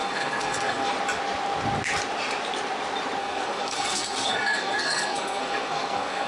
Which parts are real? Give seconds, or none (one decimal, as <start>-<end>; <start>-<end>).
0.9-3.2